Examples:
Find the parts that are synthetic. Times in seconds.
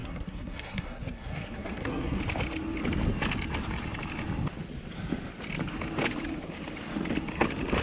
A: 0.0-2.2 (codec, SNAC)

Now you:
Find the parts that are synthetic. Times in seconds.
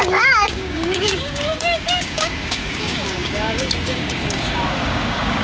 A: 0.0-5.4 (codec, DAC)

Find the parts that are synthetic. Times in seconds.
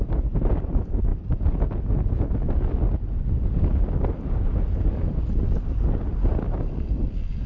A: none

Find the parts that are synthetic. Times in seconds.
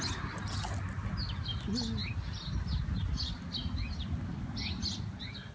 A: none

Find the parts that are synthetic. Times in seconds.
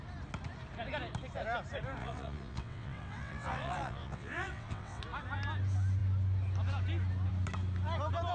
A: 2.0-5.0 (vocoder, WaveNeXt)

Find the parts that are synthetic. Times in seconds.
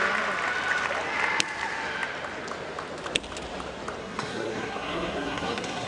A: 4.0-5.9 (codec, SNAC)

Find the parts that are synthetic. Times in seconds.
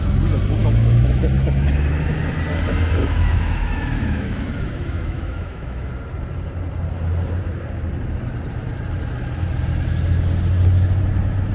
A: 0.6-1.2 (autoencoder, DAC-VAE); 3.0-5.9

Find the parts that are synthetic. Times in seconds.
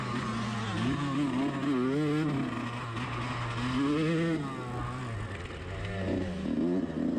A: none